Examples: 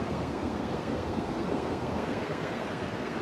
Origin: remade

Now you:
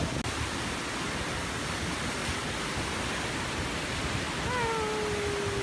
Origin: recorded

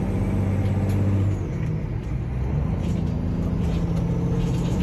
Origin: recorded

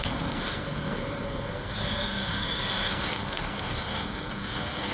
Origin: remade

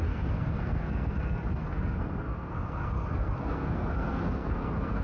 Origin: remade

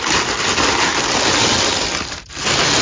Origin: recorded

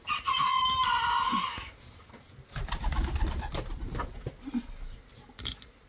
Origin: recorded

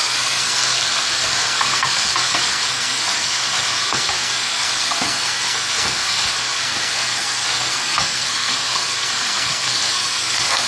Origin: remade